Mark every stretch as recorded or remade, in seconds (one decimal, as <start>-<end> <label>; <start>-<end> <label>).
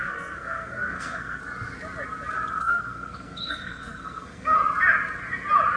0.0-1.4 remade; 1.4-2.6 recorded; 2.6-4.6 remade; 4.6-5.8 recorded